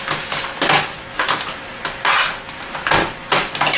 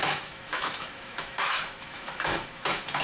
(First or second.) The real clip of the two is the first